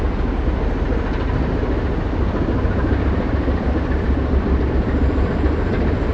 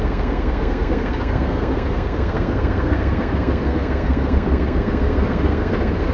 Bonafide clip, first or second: first